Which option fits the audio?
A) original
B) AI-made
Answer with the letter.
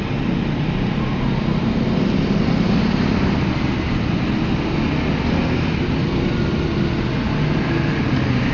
A